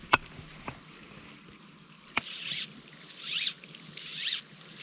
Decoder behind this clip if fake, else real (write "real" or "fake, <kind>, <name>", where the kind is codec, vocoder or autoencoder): real